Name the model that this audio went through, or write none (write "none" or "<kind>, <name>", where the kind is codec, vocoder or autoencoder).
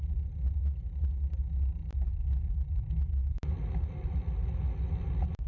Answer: none